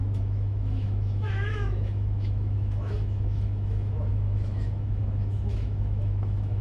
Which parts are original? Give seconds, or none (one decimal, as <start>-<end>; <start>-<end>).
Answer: none